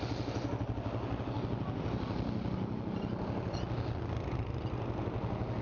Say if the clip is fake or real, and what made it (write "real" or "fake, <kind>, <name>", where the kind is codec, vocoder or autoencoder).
real